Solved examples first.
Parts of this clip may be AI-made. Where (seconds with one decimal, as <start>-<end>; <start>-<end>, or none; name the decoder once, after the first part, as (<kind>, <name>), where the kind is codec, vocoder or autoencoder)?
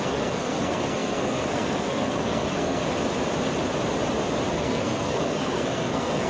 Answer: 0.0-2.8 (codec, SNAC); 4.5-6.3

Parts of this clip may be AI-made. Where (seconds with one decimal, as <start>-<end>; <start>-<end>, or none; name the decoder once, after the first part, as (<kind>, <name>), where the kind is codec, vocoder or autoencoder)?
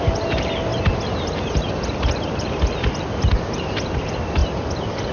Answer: none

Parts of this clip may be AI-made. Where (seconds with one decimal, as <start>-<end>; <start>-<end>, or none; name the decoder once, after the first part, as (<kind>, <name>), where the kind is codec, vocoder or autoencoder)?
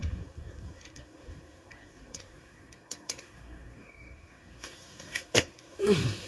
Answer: 0.0-6.3 (codec, SNAC)